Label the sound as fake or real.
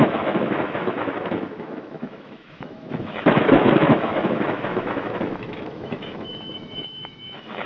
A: fake